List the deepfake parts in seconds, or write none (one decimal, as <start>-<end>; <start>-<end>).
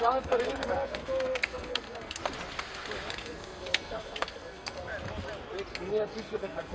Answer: 0.0-2.2; 3.1-4.9; 5.7-6.7